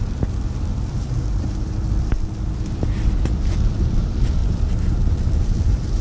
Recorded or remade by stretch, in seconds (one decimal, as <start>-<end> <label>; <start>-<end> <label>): 0.0-6.0 remade